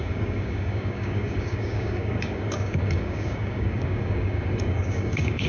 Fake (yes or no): yes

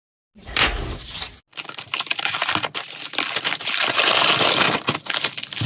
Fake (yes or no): no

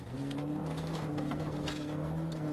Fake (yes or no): yes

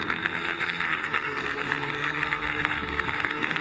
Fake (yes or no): yes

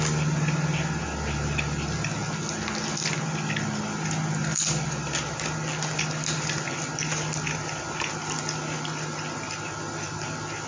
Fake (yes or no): no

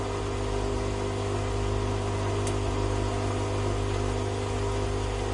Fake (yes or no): no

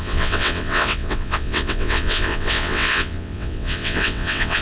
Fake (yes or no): yes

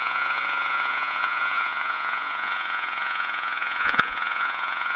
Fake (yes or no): yes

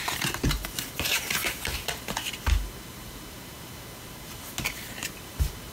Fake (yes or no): yes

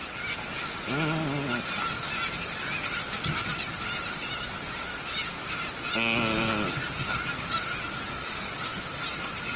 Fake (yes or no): no